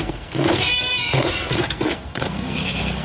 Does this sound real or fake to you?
fake